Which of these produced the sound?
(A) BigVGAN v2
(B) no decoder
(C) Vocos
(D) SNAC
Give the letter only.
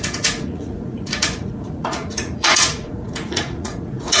C